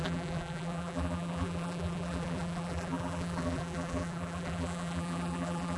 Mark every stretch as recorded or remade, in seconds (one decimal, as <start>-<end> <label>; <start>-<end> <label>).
0.0-5.8 remade